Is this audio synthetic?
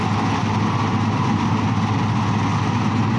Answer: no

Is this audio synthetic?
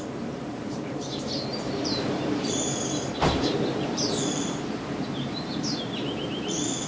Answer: yes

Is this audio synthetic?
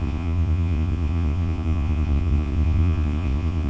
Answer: yes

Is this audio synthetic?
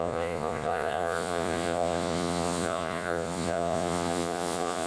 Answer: yes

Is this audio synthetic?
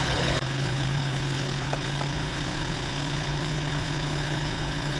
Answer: yes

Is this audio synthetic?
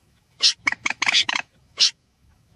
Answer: yes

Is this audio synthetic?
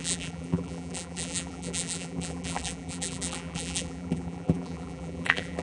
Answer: yes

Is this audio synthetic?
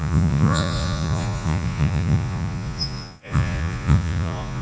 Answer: yes